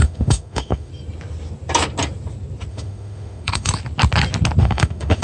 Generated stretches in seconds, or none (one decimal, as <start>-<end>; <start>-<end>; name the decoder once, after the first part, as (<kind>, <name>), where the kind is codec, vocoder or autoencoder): 0.0-0.9 (autoencoder, DAC-VAE); 2.7-3.7; 4.6-5.2